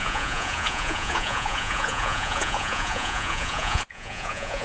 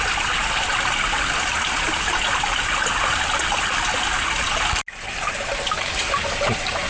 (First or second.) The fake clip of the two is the first